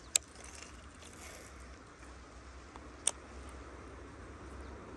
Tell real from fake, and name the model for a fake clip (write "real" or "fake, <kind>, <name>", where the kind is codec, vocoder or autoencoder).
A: real